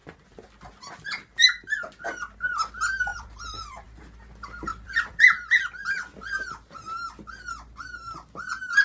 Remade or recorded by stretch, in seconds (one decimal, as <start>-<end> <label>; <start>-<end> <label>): 0.0-3.1 recorded; 3.1-4.0 remade; 4.0-4.7 recorded; 4.7-6.0 remade; 6.0-8.8 recorded